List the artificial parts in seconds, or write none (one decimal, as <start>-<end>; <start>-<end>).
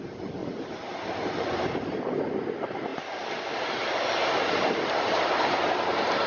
0.0-0.4; 1.4-2.9; 3.6-4.2; 4.8-6.3